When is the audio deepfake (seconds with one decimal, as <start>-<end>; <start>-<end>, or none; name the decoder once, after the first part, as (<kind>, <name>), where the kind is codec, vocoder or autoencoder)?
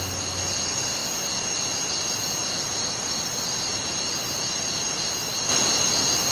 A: none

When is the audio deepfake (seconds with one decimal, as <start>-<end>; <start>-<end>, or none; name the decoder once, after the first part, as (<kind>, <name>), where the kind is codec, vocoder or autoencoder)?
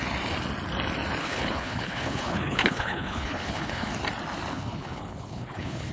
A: 1.2-3.9 (codec, HILCodec); 4.5-5.9